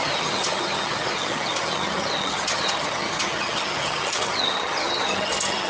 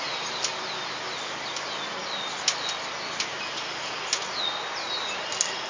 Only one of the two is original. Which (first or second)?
second